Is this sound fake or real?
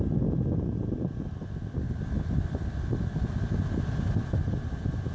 real